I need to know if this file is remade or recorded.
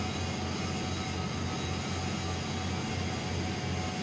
recorded